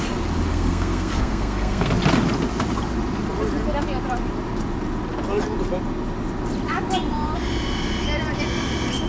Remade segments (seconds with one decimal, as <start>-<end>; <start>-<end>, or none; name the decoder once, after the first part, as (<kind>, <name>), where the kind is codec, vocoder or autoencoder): 0.5-1.9 (codec, SNAC)